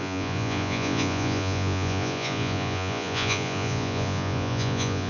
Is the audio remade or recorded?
remade